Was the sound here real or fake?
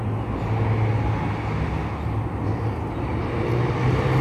real